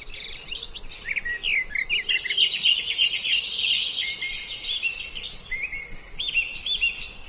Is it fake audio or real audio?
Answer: real